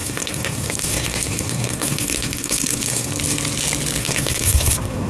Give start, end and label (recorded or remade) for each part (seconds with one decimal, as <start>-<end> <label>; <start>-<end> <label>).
0.0-3.1 remade; 3.1-4.0 recorded; 4.0-5.1 remade

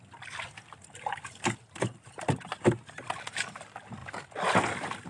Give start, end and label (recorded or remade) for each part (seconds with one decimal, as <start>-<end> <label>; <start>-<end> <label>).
0.0-5.1 recorded

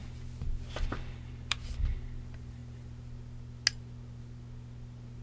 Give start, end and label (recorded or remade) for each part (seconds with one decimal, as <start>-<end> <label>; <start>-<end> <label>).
0.0-5.2 recorded

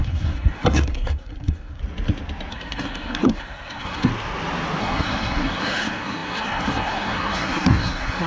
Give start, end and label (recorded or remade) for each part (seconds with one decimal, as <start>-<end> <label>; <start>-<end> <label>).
0.0-1.8 remade; 1.8-2.5 recorded; 2.5-4.1 remade; 4.1-4.8 recorded; 4.8-8.3 remade

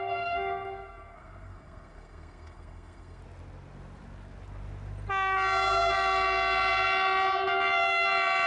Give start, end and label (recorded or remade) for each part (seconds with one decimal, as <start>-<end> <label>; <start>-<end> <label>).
0.0-3.2 remade; 3.2-8.5 recorded

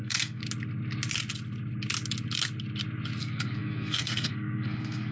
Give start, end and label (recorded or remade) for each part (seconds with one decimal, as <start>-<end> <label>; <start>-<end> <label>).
0.0-0.4 remade; 0.4-3.2 recorded; 3.2-5.1 remade